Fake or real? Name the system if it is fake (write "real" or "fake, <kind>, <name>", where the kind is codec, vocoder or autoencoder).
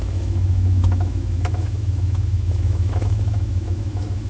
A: fake, autoencoder, DAC-VAE